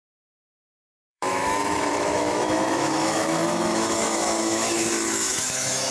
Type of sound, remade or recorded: remade